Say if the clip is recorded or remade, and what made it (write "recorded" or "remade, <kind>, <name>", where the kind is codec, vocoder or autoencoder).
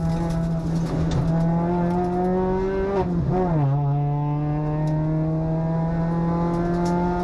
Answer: recorded